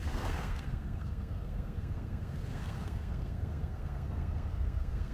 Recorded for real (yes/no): no